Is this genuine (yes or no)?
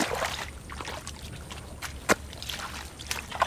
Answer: yes